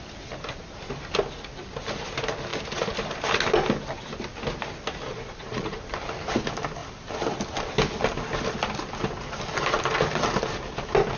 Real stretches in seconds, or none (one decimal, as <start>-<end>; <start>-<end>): 0.0-5.1; 5.8-11.2